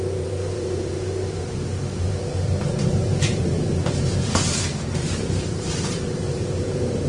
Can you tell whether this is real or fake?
fake